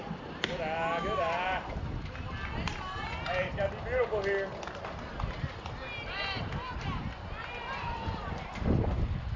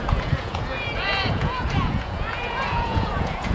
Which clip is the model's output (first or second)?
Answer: second